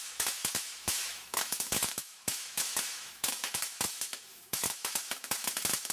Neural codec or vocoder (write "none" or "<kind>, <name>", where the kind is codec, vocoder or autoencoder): autoencoder, DAC-VAE